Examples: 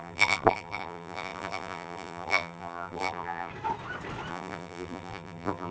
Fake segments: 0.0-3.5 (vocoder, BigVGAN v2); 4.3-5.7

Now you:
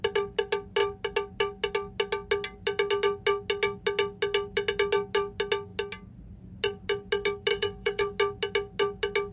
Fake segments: 7.5-8.2 (codec, DAC)

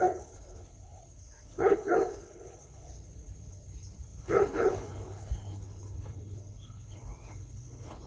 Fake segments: 0.0-8.1 (codec, HILCodec)

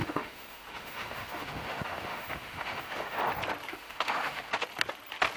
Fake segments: 0.0-3.2 (autoencoder, DAC-VAE); 3.7-4.5

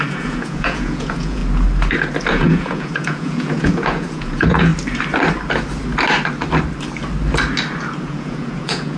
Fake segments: 0.0-1.4 (vocoder, Vocos); 2.3-4.7; 8.0-9.0